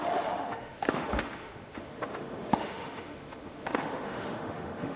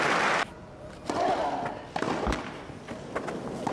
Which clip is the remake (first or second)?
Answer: first